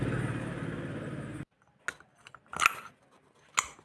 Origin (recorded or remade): recorded